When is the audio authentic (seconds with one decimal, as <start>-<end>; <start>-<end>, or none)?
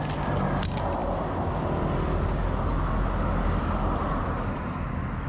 0.0-5.3